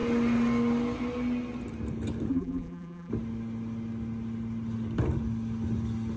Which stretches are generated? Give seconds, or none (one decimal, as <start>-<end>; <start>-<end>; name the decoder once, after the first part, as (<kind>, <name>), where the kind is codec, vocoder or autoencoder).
2.3-3.1 (vocoder, BigVGAN v2)